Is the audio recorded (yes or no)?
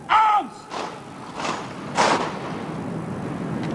yes